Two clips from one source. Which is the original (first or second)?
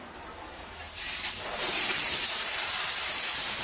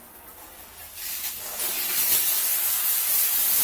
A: second